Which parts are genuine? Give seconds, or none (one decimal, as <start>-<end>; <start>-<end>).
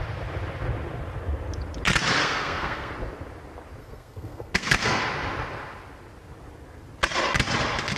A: 0.0-2.2; 2.9-3.8; 5.0-8.0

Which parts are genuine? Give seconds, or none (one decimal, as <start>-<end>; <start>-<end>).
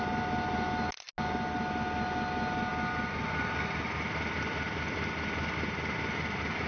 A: 0.0-6.7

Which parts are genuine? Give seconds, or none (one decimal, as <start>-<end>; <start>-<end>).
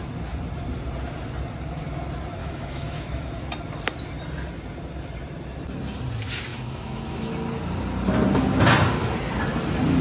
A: 0.0-2.4; 3.3-6.5; 7.3-10.0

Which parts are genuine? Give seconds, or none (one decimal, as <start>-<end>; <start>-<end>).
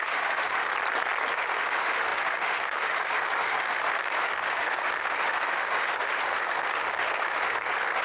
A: 0.7-1.3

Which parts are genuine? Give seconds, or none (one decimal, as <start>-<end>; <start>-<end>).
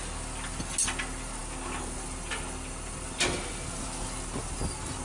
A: 0.0-5.0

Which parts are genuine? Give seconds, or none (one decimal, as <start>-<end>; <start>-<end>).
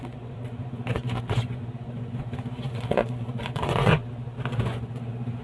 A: 4.0-4.6